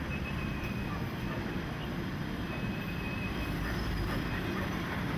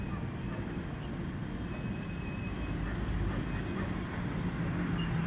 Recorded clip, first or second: second